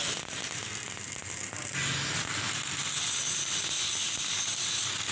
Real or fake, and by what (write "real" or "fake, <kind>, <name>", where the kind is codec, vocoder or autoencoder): real